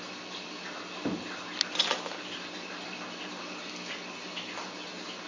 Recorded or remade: recorded